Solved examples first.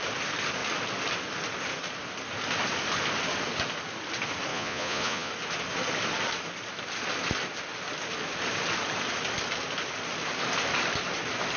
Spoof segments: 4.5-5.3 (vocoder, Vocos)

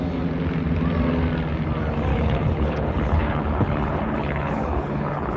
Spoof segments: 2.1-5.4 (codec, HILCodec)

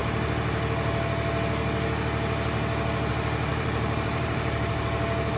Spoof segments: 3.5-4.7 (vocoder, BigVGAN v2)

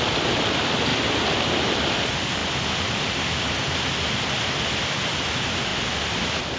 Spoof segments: 0.0-0.9 (vocoder, BigVGAN v2); 1.6-5.7

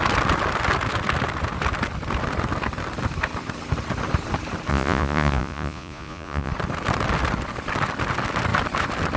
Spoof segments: 4.7-6.5 (vocoder, Vocos)

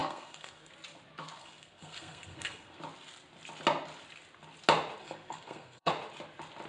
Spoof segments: 0.0-0.7 (codec, SNAC); 1.4-2.8; 5.0-5.9